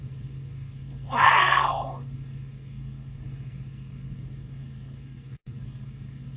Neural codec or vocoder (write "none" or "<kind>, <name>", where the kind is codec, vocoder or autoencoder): codec, SNAC